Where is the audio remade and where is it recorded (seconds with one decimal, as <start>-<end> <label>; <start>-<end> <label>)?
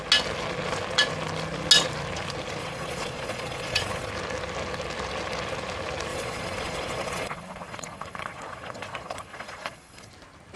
0.0-2.6 recorded; 2.6-4.1 remade; 4.1-6.1 recorded; 6.1-10.1 remade; 10.1-10.6 recorded